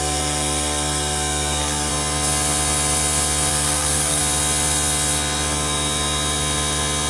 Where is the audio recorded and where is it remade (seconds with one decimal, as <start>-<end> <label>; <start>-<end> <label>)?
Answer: 0.0-1.9 remade; 1.9-3.5 recorded; 3.5-4.2 remade; 4.2-7.1 recorded